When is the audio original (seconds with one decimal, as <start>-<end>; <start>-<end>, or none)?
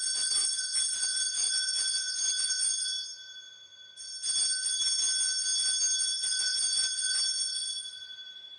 4.1-6.4